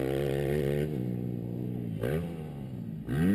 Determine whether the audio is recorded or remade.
recorded